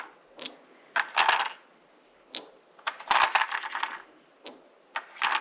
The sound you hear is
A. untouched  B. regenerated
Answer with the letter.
A